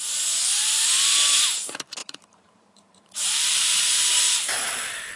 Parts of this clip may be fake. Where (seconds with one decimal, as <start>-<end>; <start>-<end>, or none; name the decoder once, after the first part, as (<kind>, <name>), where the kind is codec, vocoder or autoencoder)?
2.0-5.2 (vocoder, BigVGAN v2)